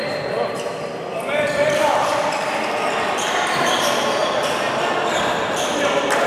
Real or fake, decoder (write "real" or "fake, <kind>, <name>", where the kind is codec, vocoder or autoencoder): fake, vocoder, BigVGAN v2